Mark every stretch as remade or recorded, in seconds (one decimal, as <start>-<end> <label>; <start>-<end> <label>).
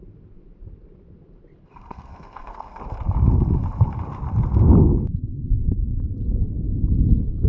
0.0-1.6 recorded; 1.6-2.8 remade; 2.8-5.4 recorded; 5.4-6.0 remade; 6.0-7.5 recorded